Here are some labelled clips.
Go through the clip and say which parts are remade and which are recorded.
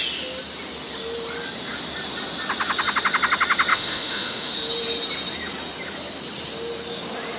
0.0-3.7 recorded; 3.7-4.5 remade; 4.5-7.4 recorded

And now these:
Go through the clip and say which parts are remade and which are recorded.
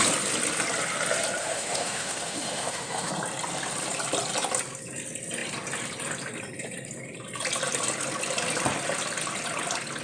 0.0-1.4 recorded; 1.4-3.1 remade; 3.1-10.0 recorded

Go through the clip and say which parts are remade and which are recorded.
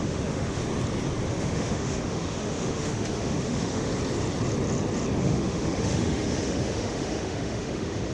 0.0-0.7 remade; 0.7-1.3 recorded; 1.3-3.9 remade; 3.9-5.2 recorded; 5.2-8.1 remade